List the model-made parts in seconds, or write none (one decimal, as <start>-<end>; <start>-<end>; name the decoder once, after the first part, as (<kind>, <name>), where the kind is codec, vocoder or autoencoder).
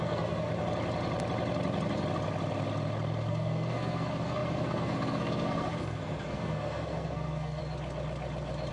0.0-0.5 (codec, SNAC); 3.3-7.6